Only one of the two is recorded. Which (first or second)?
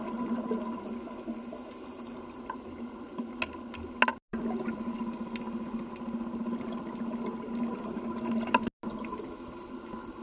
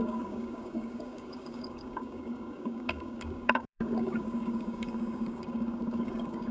first